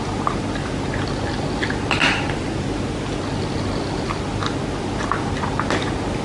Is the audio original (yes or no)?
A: yes